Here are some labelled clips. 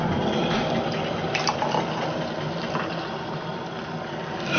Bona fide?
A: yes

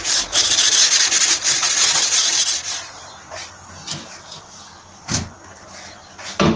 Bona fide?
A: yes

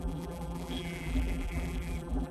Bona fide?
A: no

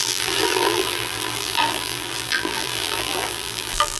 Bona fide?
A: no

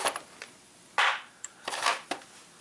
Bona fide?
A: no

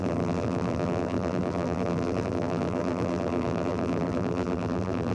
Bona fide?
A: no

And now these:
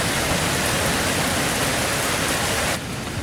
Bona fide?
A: yes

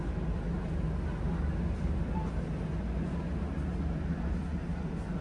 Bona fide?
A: yes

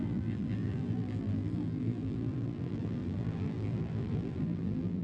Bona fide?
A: no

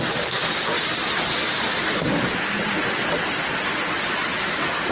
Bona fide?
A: yes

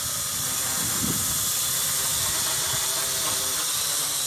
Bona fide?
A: yes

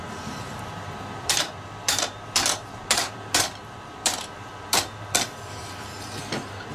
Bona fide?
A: no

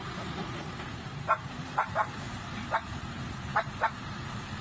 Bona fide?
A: no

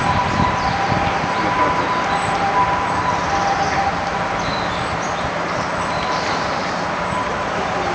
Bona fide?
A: no